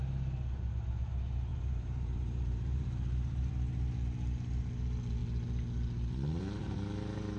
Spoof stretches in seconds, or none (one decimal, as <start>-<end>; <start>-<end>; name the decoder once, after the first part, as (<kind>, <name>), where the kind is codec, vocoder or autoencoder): 1.5-3.5 (vocoder, BigVGAN v2)